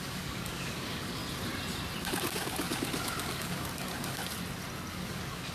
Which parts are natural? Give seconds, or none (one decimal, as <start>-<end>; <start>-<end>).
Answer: 1.2-2.0; 4.2-4.9